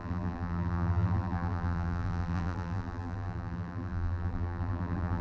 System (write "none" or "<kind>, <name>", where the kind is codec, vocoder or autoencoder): vocoder, BigVGAN v2